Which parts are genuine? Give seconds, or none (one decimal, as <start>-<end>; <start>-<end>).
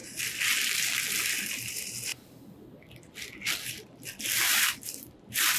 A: 0.0-2.1